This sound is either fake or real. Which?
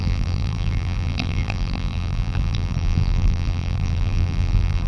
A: fake